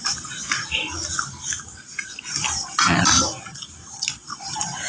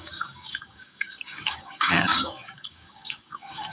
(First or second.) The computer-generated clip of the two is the second